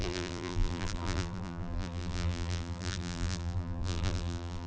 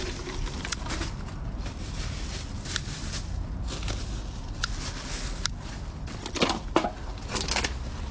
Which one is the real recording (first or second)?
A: second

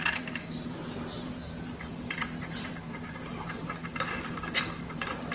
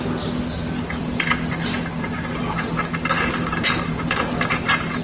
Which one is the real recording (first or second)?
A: second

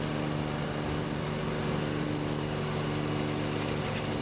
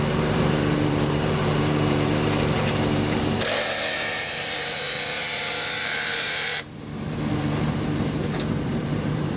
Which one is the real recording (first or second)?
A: first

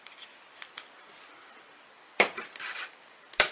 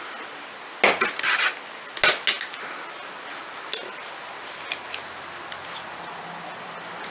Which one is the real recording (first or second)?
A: second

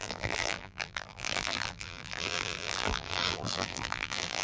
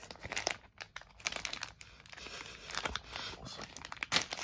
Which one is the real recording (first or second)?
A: second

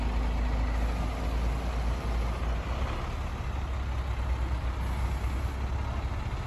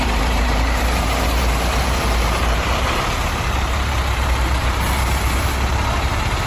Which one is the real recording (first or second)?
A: first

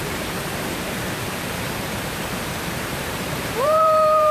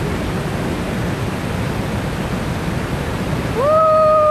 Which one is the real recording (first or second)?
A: second